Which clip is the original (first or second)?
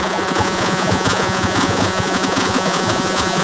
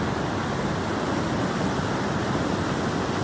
second